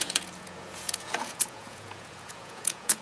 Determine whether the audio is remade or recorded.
remade